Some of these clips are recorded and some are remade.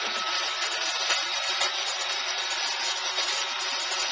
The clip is recorded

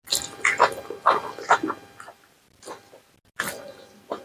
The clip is recorded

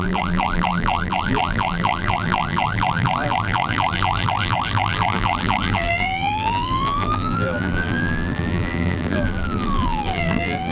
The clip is remade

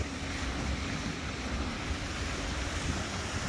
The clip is remade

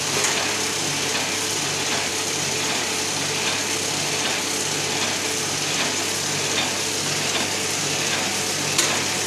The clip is remade